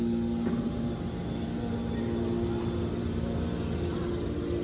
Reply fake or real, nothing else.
real